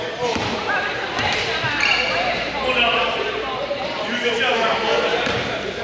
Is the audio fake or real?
fake